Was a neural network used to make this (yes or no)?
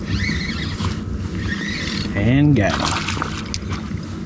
no